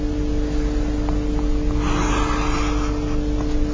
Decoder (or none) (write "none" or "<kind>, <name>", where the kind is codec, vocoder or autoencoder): none